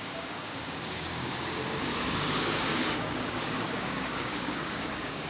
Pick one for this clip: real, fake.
fake